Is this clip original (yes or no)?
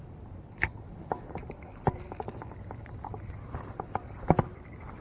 yes